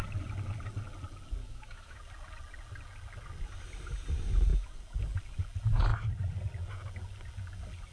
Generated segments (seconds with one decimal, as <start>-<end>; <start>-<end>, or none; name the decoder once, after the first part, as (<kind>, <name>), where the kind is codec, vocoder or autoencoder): 1.4-2.0 (autoencoder, DAC-VAE)